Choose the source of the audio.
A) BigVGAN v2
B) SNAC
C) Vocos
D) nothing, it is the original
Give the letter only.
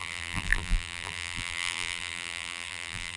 A